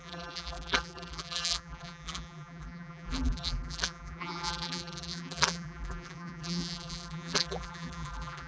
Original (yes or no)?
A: no